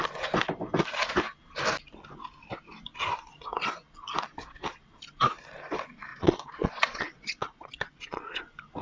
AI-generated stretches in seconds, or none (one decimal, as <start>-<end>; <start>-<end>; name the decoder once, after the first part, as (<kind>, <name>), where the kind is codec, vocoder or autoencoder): 6.1-8.4 (vocoder, Vocos)